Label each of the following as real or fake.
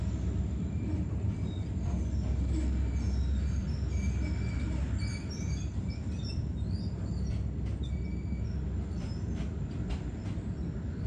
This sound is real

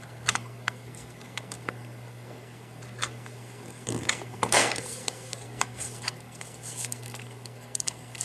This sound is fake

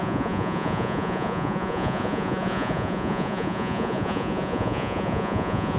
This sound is fake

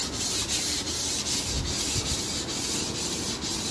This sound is real